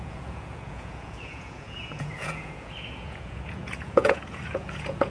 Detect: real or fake fake